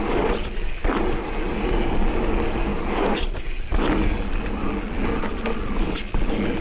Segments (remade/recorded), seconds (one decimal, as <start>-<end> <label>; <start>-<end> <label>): 0.0-6.6 recorded